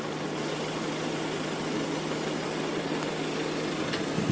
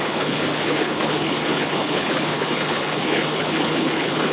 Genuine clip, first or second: first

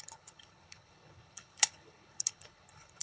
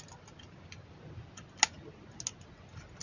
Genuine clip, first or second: second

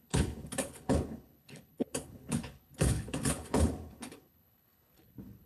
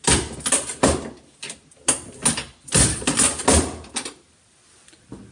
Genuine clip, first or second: second